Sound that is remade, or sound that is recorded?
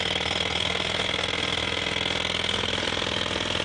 recorded